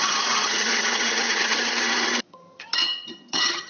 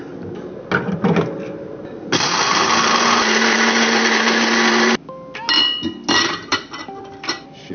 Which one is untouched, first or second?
second